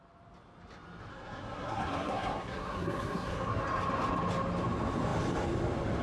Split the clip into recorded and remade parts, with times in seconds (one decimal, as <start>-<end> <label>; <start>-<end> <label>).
0.0-1.1 recorded; 1.1-3.6 remade; 3.6-6.0 recorded